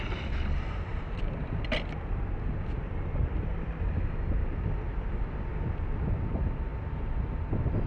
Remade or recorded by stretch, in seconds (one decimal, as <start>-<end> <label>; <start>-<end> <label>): 0.0-0.9 recorded; 0.9-2.2 remade; 2.2-7.9 recorded